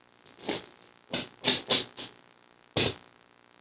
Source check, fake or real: real